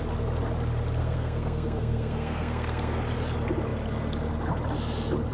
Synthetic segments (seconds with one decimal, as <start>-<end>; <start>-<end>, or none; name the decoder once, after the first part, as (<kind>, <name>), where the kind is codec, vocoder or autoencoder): 1.0-3.0 (codec, SNAC)